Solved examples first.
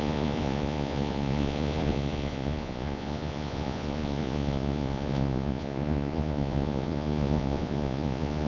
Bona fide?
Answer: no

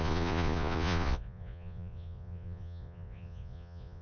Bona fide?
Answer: no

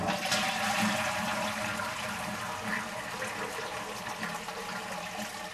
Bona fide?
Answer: yes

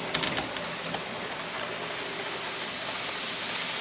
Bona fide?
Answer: yes